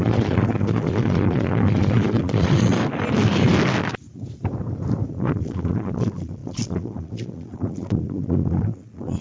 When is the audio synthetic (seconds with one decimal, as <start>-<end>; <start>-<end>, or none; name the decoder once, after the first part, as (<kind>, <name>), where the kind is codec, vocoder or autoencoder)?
0.0-2.7 (vocoder, Vocos); 5.1-9.2